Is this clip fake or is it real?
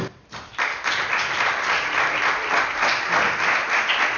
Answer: real